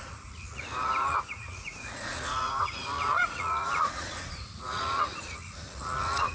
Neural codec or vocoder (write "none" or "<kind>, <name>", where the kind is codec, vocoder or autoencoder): vocoder, Vocos